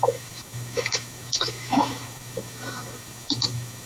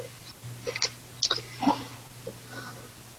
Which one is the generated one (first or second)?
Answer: first